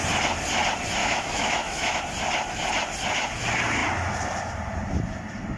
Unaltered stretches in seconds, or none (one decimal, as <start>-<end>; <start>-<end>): 0.0-1.0; 2.0-5.6